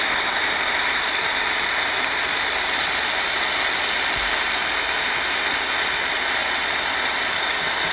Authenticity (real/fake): fake